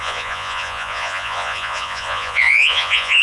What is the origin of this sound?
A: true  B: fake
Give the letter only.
B